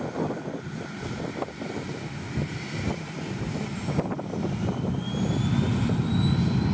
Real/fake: real